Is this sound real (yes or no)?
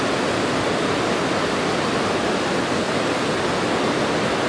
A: yes